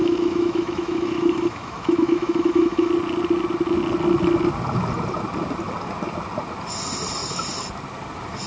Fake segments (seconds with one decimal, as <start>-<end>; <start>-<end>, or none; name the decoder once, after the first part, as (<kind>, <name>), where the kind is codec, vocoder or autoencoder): 0.0-2.9 (autoencoder, DAC-VAE)